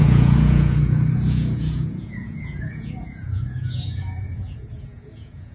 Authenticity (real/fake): fake